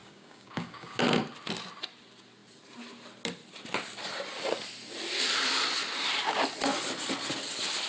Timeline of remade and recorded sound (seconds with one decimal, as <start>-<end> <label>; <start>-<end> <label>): 0.0-1.0 remade; 1.0-7.9 recorded